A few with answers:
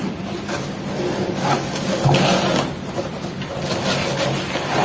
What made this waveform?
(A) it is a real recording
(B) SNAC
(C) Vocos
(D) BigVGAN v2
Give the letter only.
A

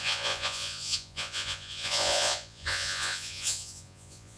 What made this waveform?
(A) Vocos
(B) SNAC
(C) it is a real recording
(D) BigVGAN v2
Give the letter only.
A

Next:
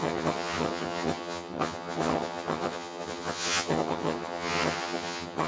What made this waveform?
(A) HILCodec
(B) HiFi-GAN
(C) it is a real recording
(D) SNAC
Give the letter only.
B